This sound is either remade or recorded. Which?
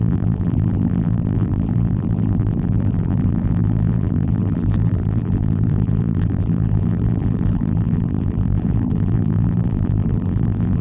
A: remade